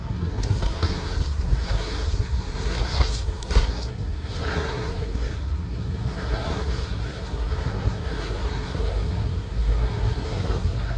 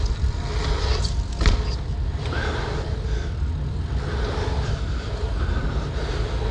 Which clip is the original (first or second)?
second